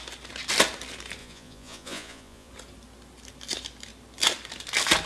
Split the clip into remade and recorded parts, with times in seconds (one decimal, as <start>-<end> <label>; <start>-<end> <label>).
0.0-1.2 recorded; 1.2-2.5 remade; 2.5-5.1 recorded